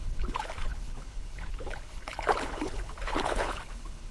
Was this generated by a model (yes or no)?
yes